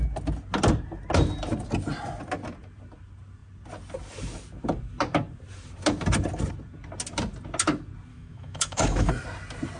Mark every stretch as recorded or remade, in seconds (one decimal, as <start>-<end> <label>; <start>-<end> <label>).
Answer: 0.0-8.1 recorded; 8.1-9.1 remade; 9.1-9.8 recorded